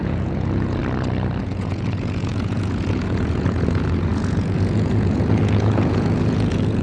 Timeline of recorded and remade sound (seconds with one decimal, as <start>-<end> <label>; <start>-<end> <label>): 0.0-0.8 remade; 0.8-1.4 recorded; 1.4-6.8 remade